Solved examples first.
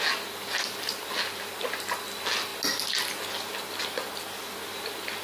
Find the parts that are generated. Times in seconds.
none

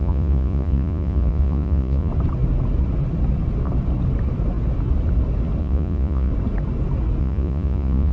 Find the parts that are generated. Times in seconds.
0.0-2.1 (vocoder, Vocos); 5.6-6.3; 7.2-8.1

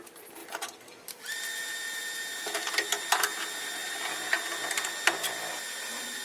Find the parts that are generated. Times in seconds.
none

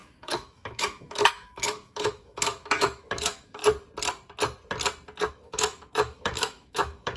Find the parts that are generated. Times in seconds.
0.0-3.6 (autoencoder, DAC-VAE); 5.3-7.2

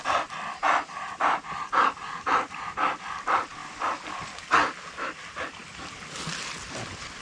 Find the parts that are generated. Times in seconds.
3.6-4.8 (vocoder, BigVGAN v2); 5.6-6.4